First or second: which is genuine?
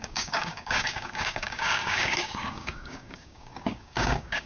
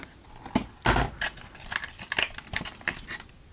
second